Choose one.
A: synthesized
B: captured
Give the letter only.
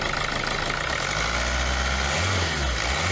B